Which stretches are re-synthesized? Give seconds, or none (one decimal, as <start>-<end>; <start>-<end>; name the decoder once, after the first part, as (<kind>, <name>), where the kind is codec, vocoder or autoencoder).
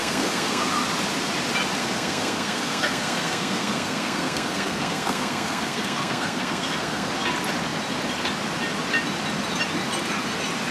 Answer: 0.0-0.7 (codec, SNAC); 1.8-7.1